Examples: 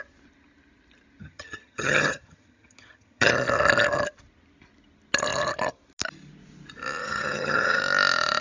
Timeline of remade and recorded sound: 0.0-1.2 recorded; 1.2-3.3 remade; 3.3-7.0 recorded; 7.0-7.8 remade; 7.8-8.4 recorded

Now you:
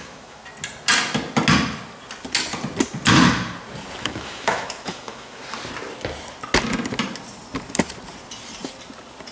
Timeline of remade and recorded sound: 0.0-0.4 remade; 0.4-4.0 recorded; 4.0-5.4 remade; 5.4-9.3 recorded

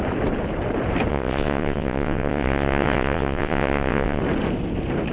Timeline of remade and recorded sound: 0.0-1.1 recorded; 1.1-4.2 remade; 4.2-5.1 recorded

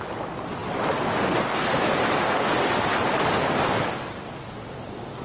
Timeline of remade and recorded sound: 0.0-5.2 recorded

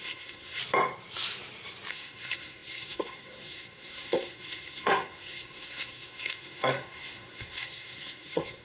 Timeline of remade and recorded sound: 0.0-0.6 remade; 0.6-1.9 recorded; 1.9-8.6 remade

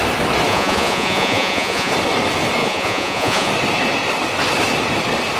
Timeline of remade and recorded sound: 0.0-0.5 recorded; 0.5-1.9 remade; 1.9-2.6 recorded; 2.6-3.5 remade; 3.5-5.4 recorded